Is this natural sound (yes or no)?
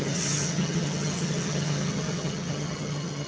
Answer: no